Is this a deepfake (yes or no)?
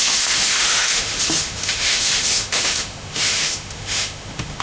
yes